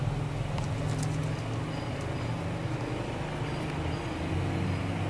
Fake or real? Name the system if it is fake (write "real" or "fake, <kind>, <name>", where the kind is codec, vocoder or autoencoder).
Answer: real